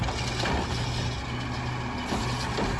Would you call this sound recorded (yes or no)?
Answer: yes